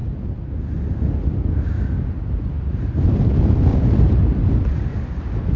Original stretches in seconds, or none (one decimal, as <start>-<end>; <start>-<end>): 0.0-3.7; 4.2-5.6